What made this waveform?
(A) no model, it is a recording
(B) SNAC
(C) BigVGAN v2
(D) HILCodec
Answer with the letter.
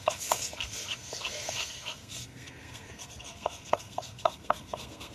B